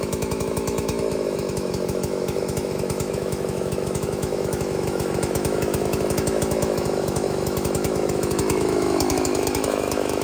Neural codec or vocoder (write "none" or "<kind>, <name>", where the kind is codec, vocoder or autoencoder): autoencoder, DAC-VAE